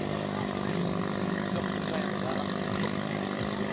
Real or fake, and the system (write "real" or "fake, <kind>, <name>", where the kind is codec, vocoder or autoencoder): real